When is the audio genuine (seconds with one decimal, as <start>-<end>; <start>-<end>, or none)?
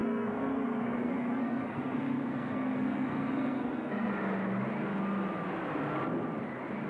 4.1-6.9